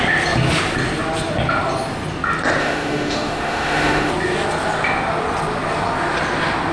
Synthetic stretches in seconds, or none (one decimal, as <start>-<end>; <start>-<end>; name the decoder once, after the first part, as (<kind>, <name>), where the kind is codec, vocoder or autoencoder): 2.6-4.1 (autoencoder, DAC-VAE)